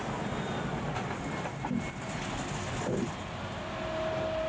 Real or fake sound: real